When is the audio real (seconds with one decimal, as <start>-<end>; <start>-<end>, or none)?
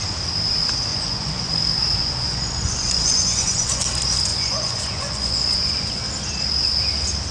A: 0.0-0.9; 1.5-2.0; 3.8-4.3; 6.0-7.3